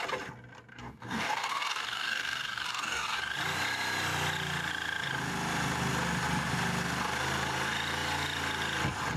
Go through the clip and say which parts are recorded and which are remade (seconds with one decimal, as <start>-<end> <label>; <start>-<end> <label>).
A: 0.0-0.7 recorded; 0.7-3.2 remade; 3.2-9.2 recorded